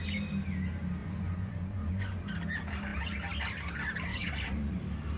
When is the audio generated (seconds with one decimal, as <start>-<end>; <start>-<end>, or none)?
1.0-2.3; 4.1-4.8